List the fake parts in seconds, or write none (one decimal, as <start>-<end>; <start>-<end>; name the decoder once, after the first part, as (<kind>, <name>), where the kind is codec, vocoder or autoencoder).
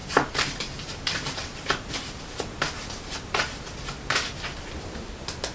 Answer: 0.0-1.9 (vocoder, BigVGAN v2)